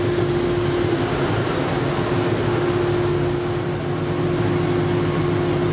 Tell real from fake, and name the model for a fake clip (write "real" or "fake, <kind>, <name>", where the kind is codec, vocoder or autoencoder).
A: real